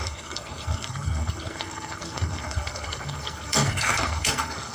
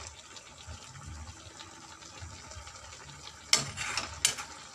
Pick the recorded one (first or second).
second